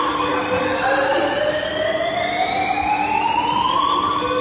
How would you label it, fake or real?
real